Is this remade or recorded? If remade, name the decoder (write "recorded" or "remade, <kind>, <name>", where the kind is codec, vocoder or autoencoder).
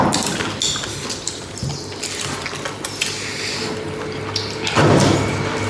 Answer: recorded